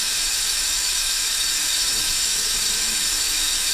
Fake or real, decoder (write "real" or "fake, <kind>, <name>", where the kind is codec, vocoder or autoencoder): fake, autoencoder, DAC-VAE